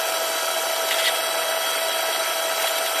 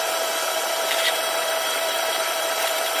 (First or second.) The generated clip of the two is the second